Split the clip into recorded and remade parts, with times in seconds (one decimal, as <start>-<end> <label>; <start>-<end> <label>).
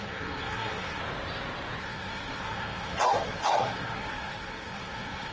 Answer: 0.0-1.0 remade; 1.0-1.8 recorded; 1.8-5.3 remade